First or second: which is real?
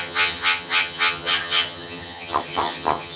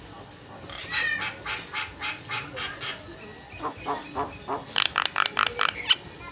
second